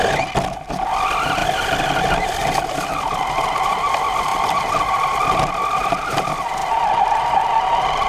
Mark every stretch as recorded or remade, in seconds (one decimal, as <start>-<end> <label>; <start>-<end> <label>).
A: 0.0-1.4 recorded; 1.4-1.9 remade; 1.9-4.3 recorded; 4.3-4.9 remade; 4.9-6.6 recorded; 6.6-7.2 remade; 7.2-8.1 recorded